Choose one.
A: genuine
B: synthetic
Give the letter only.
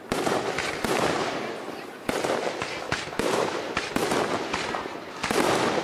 B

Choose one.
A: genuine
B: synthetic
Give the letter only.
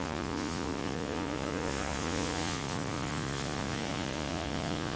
B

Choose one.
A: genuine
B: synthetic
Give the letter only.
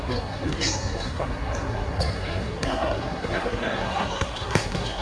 B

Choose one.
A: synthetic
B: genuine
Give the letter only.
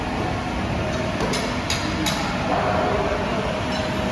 B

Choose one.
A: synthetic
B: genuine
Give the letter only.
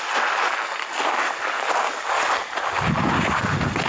B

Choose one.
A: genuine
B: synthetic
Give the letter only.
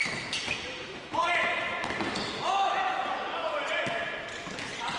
B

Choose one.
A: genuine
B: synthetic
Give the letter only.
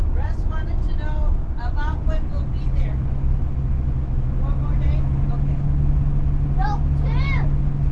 A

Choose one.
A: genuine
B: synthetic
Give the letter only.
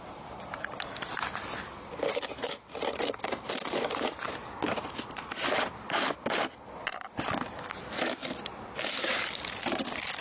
A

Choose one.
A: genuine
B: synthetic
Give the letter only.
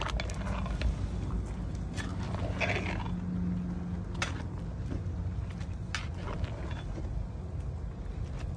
A